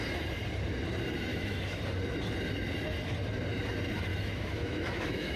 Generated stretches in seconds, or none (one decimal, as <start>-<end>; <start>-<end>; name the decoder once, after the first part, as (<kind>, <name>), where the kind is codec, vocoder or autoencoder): 1.3-1.8 (autoencoder, DAC-VAE); 4.1-5.4

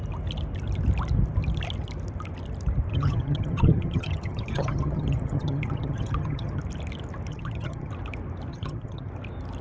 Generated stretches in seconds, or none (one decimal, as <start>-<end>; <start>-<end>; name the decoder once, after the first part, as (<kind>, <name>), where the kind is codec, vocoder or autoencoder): 2.9-6.6 (vocoder, HiFi-GAN); 7.3-7.9; 8.5-9.1

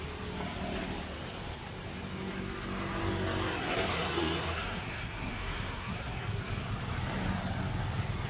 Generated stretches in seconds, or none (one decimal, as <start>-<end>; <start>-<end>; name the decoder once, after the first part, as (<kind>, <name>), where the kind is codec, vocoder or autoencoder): 3.6-6.4 (codec, SNAC)

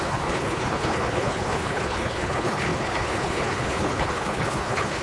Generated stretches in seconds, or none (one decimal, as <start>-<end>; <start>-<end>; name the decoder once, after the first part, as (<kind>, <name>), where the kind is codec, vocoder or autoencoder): 0.0-5.0 (codec, HILCodec)

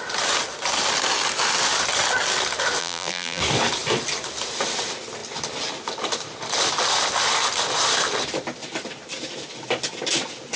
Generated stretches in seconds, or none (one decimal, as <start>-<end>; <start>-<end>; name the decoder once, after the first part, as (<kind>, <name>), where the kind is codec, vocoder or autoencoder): 2.8-3.4 (vocoder, BigVGAN v2)

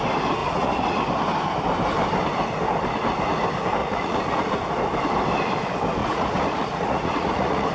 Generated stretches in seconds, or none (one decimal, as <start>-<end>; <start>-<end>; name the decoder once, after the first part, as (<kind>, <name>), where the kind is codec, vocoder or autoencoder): 0.4-1.0 (vocoder, Vocos); 3.8-4.6; 6.0-7.7

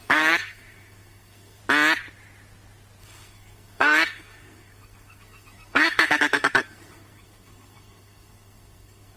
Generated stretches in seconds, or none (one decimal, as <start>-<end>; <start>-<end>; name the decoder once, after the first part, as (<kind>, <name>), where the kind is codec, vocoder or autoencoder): 0.0-1.6 (codec, SNAC); 3.0-9.2

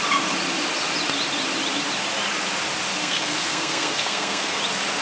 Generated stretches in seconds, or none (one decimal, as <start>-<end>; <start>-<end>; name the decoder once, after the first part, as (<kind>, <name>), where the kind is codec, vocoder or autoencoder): 3.0-4.6 (codec, SNAC)